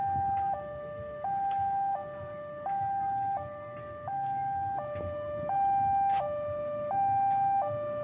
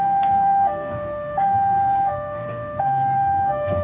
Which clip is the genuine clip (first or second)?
first